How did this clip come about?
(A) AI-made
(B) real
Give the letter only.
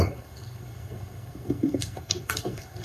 A